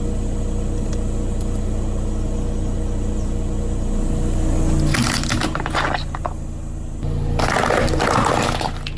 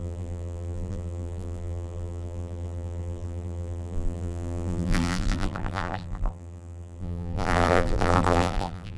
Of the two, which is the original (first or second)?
first